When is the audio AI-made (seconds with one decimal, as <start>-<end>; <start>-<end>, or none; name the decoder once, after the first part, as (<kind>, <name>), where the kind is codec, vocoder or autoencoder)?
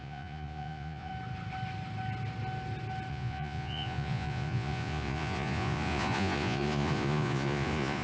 0.0-1.1 (vocoder, Vocos); 3.1-8.0